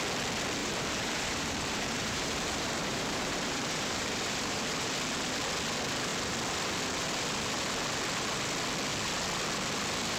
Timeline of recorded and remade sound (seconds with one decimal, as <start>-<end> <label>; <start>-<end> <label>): 0.0-0.6 recorded; 0.6-4.6 remade; 4.6-10.2 recorded